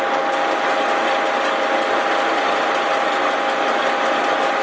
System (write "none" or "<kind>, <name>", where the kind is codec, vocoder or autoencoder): none